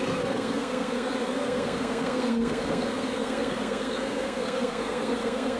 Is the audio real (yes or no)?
no